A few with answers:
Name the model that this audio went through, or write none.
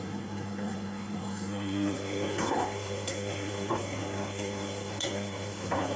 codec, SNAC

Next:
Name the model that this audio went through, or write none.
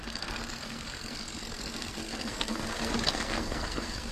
codec, SNAC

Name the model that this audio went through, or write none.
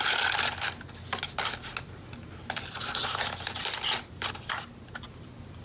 none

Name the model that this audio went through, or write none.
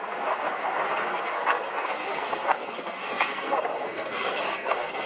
codec, SNAC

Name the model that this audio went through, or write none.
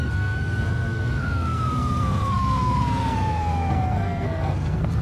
codec, SNAC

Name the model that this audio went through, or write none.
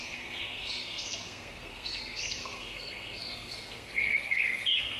codec, SNAC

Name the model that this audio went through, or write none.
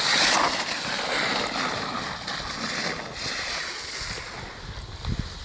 none